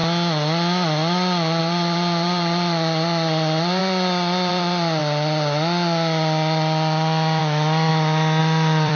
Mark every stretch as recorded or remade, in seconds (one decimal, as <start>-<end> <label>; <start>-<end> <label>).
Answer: 0.0-1.6 recorded; 1.6-3.8 remade; 3.8-4.5 recorded; 4.5-5.0 remade; 5.0-7.4 recorded; 7.4-7.9 remade; 7.9-8.4 recorded; 8.4-9.0 remade